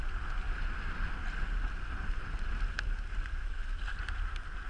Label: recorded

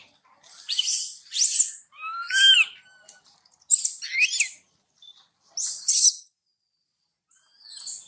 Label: recorded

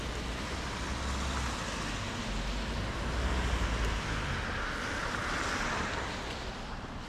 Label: recorded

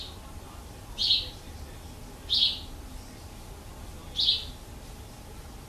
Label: recorded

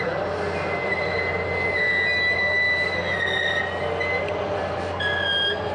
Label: recorded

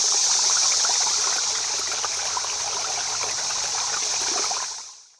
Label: recorded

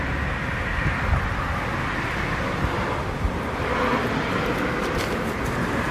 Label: recorded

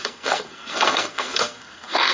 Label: remade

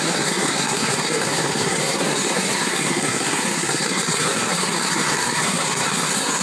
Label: remade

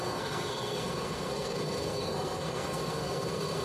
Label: remade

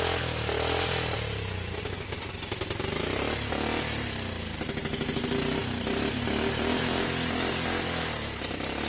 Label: recorded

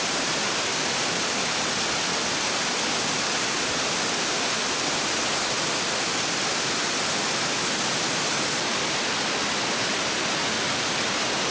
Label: recorded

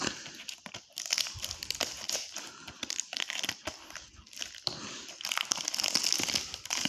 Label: recorded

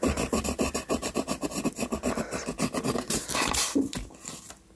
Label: recorded